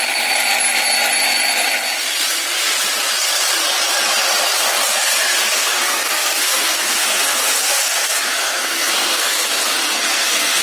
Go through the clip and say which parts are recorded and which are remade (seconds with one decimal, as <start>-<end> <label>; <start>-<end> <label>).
0.0-5.6 recorded; 5.6-10.6 remade